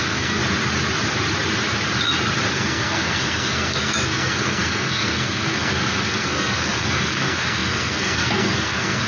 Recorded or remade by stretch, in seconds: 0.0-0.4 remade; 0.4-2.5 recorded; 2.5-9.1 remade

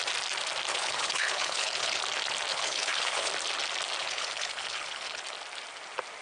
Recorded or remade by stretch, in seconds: 0.0-0.7 recorded; 0.7-2.0 remade; 2.0-2.5 recorded; 2.5-3.3 remade; 3.3-4.0 recorded; 4.0-5.2 remade; 5.2-6.2 recorded